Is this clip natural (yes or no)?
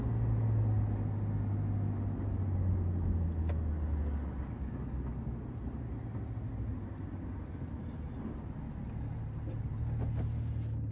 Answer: yes